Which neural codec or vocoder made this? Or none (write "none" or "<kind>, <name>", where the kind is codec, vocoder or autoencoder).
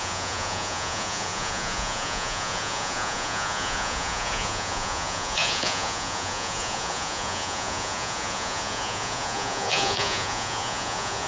vocoder, Vocos